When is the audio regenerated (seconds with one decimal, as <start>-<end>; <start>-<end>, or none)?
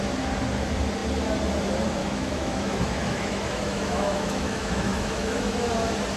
2.0-5.7